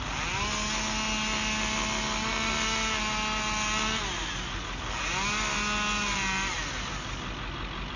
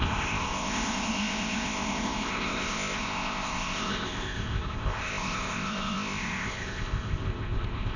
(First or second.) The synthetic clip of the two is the second